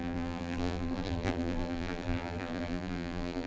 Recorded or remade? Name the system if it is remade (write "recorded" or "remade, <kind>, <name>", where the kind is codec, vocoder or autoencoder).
remade, vocoder, BigVGAN v2